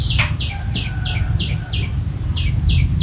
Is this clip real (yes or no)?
yes